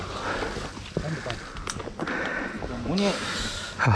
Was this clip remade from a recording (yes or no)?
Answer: no